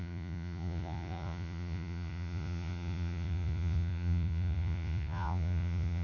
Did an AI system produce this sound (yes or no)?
yes